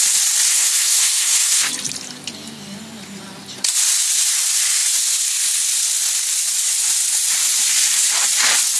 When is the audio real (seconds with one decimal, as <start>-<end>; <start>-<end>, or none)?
0.0-0.5; 1.7-8.8